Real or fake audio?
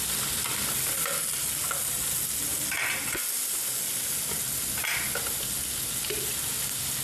real